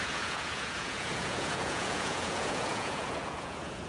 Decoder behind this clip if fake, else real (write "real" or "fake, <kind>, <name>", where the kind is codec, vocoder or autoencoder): fake, vocoder, Vocos